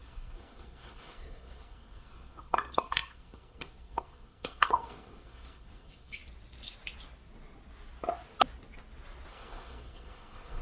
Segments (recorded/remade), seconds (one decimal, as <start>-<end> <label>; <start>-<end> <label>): 0.0-6.2 remade; 6.2-9.3 recorded; 9.3-10.6 remade